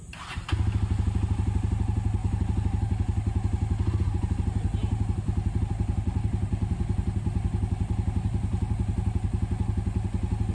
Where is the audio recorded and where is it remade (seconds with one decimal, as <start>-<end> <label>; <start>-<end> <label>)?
0.0-10.5 recorded